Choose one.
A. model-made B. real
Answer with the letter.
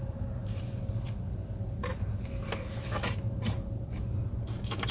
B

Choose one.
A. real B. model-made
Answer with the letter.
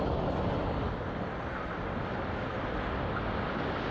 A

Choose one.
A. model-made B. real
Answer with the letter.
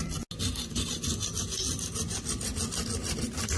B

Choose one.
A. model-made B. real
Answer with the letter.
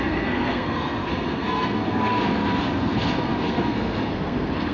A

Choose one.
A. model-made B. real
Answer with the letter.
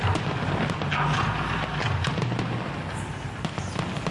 B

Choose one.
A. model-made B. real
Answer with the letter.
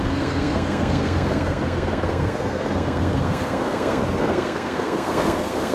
A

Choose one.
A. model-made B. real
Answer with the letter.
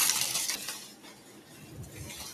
B